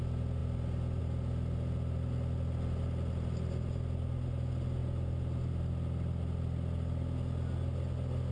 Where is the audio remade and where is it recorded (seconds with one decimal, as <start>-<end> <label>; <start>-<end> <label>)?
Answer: 0.0-8.3 recorded